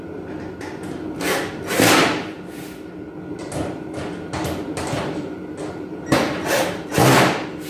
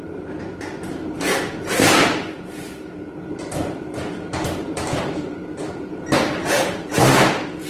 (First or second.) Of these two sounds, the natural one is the first